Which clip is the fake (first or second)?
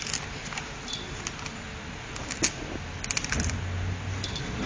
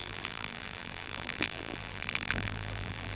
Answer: second